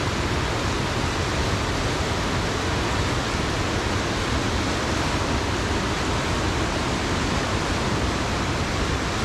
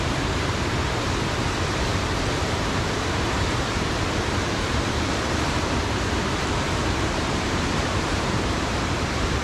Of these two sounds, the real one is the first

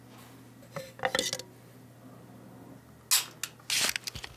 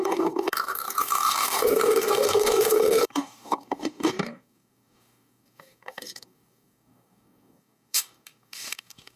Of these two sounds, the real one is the first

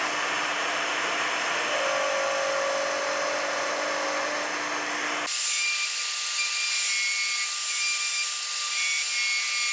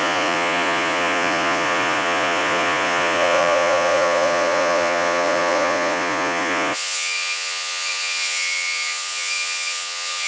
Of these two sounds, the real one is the first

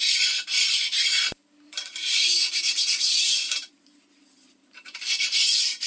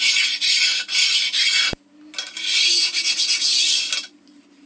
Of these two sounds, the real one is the second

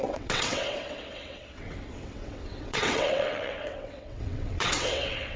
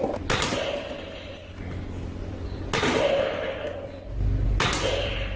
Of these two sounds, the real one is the second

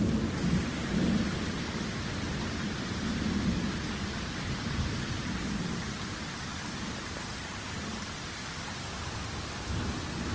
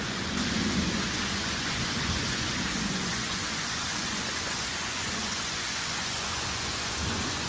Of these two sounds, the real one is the first